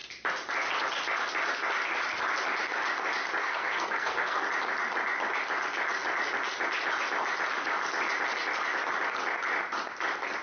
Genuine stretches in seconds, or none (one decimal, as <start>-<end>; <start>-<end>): 0.0-3.4; 4.4-10.4